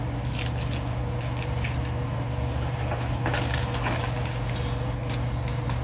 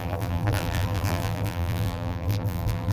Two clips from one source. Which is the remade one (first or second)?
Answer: second